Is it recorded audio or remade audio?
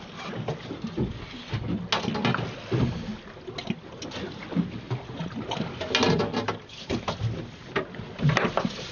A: recorded